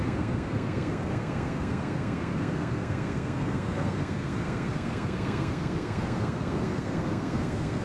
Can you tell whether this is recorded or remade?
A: remade